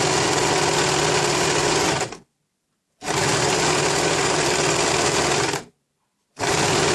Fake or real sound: real